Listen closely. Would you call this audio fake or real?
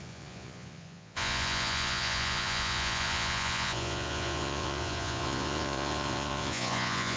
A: fake